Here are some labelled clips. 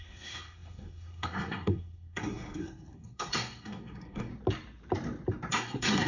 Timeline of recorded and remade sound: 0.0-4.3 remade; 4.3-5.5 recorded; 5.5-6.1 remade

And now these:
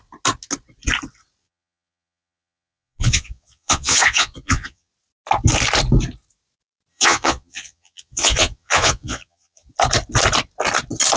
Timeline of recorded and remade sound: 0.0-1.4 recorded; 1.4-4.9 remade; 4.9-6.9 recorded; 6.9-9.7 remade; 9.7-11.2 recorded

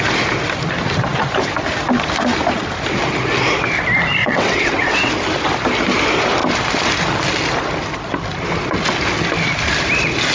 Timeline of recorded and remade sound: 0.0-4.2 recorded; 4.2-5.1 remade; 5.1-10.3 recorded

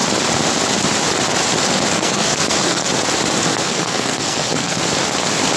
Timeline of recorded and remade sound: 0.0-1.9 recorded; 1.9-2.9 remade; 2.9-3.5 recorded; 3.5-4.8 remade; 4.8-5.6 recorded

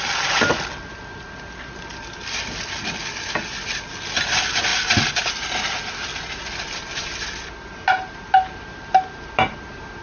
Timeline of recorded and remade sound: 0.0-10.0 recorded